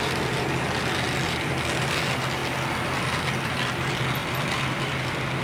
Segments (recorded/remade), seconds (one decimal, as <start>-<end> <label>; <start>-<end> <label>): 0.0-5.4 recorded